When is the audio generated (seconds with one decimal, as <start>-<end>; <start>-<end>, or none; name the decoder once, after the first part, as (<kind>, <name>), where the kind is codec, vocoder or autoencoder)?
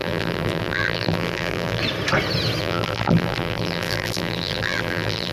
0.0-1.8 (vocoder, BigVGAN v2); 2.6-5.3